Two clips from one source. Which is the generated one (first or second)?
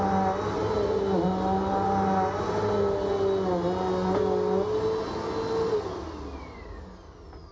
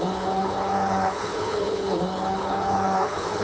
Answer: second